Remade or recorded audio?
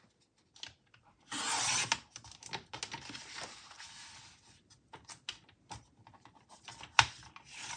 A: recorded